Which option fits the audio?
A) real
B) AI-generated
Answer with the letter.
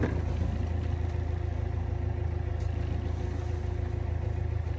A